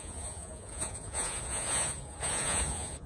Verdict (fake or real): fake